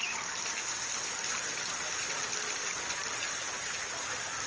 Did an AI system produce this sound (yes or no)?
no